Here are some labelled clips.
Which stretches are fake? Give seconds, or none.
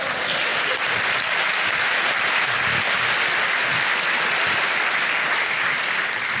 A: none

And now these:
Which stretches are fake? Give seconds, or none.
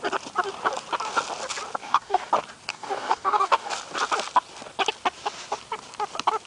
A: 1.8-2.3 (codec, DAC); 2.7-3.7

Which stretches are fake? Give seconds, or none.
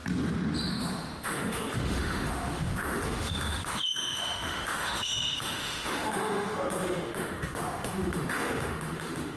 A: 0.7-9.4 (autoencoder, DAC-VAE)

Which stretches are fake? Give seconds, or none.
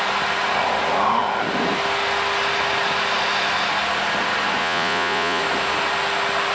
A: 4.6-5.4 (vocoder, Vocos)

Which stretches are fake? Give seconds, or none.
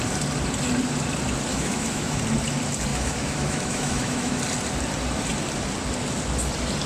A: 1.5-2.2 (autoencoder, DAC-VAE); 2.9-4.4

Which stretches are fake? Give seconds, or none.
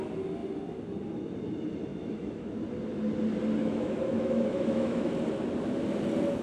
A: 1.9-2.6 (autoencoder, DAC-VAE); 3.6-5.1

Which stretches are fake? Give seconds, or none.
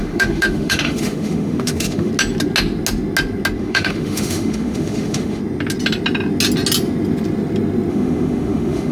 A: 0.0-2.1 (autoencoder, DAC-VAE); 3.6-5.4; 7.9-8.9